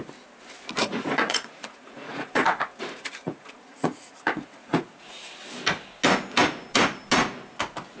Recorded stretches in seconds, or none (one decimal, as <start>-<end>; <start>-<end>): 0.0-0.8; 5.3-8.0